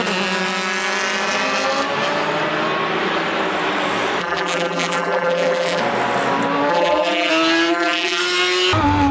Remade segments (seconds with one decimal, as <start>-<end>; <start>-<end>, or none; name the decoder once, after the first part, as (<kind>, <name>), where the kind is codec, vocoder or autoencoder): 4.2-5.8 (vocoder, BigVGAN v2); 6.7-7.3; 7.7-8.2